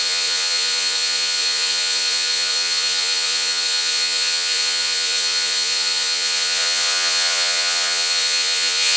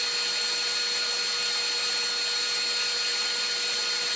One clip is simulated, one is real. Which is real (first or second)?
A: second